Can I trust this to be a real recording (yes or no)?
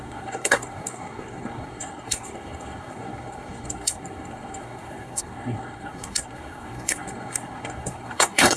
no